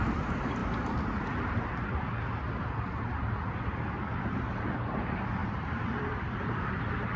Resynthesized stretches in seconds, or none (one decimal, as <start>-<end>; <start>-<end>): 5.4-6.7

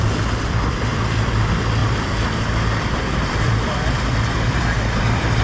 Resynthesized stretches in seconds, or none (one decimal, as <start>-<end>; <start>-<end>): 0.0-5.4

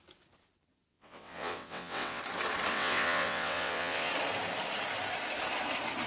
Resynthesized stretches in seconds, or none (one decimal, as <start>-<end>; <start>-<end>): 0.9-2.2; 2.7-4.1